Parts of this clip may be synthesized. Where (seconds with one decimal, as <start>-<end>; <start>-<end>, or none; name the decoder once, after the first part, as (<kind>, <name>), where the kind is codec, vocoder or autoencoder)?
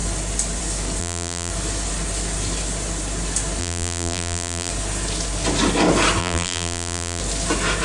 1.0-1.5 (vocoder, BigVGAN v2); 3.6-4.7; 6.2-7.2